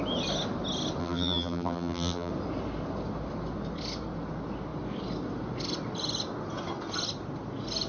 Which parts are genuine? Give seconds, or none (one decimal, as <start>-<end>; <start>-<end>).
0.0-1.0; 2.3-7.9